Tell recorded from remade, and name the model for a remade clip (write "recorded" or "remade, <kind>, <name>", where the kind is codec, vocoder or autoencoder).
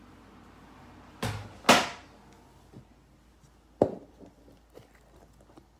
recorded